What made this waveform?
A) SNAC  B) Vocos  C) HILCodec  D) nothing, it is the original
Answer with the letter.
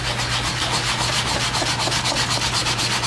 D